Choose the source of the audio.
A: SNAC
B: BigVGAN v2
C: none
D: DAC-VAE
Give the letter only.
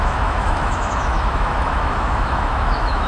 D